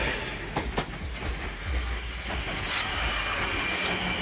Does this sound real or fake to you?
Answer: real